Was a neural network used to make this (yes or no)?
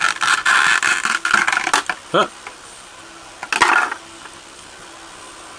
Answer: no